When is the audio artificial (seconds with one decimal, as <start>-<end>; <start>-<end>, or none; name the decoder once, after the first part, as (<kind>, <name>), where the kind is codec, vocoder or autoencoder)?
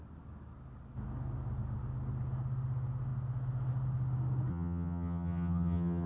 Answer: 4.5-6.1 (vocoder, HiFi-GAN)